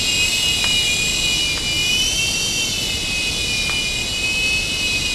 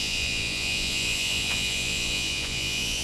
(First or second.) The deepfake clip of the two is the second